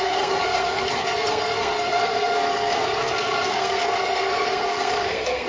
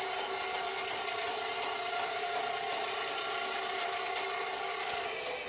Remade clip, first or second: first